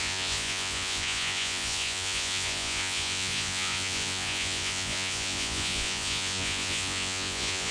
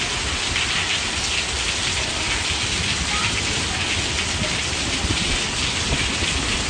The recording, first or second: second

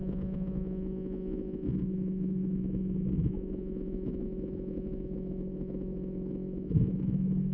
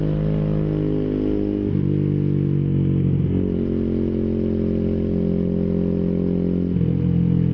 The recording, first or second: second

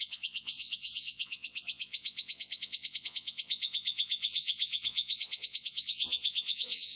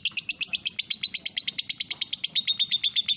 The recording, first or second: second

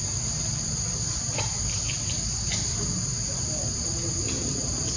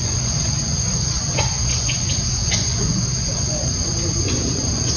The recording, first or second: first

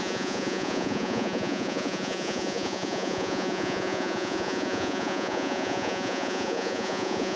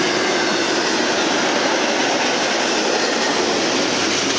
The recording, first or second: second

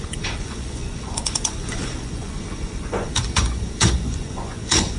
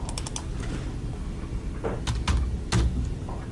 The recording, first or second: second